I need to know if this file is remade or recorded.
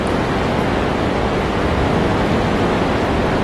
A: recorded